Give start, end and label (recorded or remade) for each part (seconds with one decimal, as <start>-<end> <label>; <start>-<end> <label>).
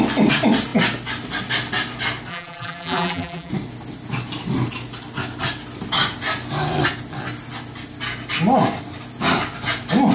0.0-2.3 recorded; 2.3-3.5 remade; 3.5-10.1 recorded